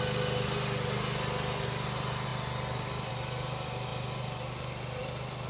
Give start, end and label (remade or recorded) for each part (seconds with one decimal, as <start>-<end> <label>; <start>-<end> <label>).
0.0-5.5 recorded

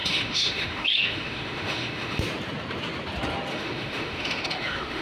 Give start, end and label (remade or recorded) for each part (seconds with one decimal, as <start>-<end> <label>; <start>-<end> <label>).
0.0-2.2 remade; 2.2-3.5 recorded; 3.5-5.0 remade